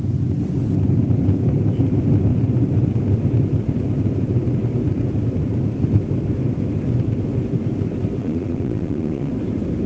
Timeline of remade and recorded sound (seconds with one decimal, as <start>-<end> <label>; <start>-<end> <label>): 0.0-8.2 recorded; 8.2-9.3 remade; 9.3-9.9 recorded